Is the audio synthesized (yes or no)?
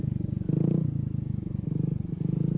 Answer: no